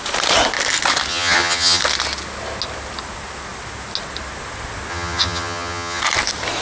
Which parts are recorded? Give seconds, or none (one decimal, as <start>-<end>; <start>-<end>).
0.0-1.1; 1.8-4.9; 6.0-6.6